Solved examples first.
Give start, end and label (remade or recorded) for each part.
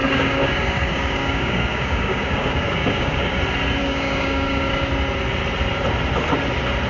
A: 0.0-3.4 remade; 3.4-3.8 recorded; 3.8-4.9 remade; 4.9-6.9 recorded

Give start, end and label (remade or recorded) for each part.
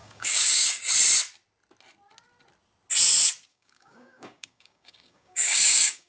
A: 0.0-0.8 remade; 0.8-3.5 recorded; 3.5-6.1 remade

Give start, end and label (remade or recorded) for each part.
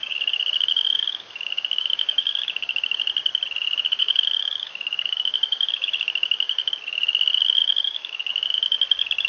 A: 0.0-3.0 remade; 3.0-4.0 recorded; 4.0-6.7 remade; 6.7-7.6 recorded; 7.6-8.3 remade; 8.3-9.3 recorded